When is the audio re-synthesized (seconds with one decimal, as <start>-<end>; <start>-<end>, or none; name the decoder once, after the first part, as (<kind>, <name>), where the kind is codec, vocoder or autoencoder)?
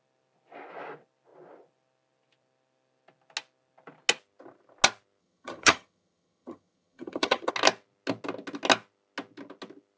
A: 5.2-7.5 (vocoder, HiFi-GAN)